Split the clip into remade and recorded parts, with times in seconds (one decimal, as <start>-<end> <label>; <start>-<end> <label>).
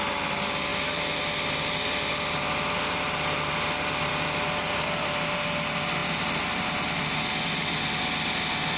0.0-8.8 recorded